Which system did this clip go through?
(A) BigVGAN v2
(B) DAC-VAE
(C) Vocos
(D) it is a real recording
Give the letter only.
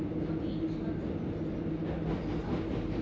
D